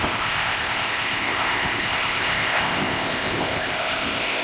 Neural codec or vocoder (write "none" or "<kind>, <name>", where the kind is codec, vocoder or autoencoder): codec, ZipCodec